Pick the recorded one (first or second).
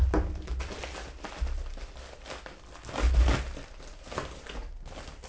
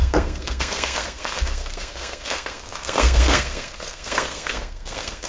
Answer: first